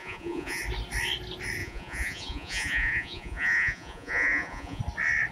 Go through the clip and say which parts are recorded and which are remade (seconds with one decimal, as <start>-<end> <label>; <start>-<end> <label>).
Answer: 0.0-0.6 remade; 0.6-1.6 recorded; 1.6-4.8 remade; 4.8-5.3 recorded